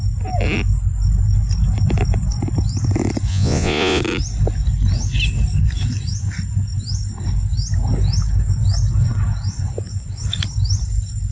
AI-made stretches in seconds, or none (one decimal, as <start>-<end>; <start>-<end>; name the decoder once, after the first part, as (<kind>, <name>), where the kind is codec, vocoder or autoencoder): 3.3-4.0 (vocoder, Vocos)